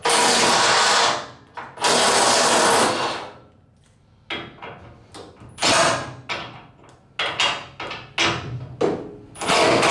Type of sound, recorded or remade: recorded